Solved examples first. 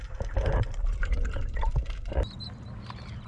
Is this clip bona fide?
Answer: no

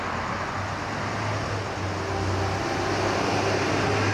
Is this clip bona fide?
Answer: yes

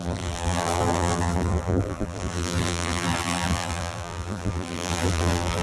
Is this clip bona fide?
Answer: no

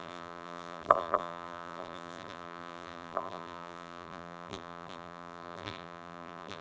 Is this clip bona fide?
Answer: no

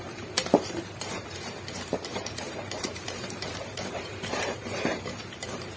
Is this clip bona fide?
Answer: no